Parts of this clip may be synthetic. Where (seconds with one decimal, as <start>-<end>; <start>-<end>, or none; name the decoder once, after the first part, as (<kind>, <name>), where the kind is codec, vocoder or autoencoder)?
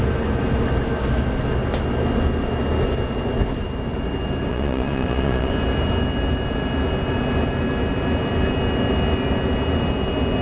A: 4.5-5.5 (vocoder, Vocos)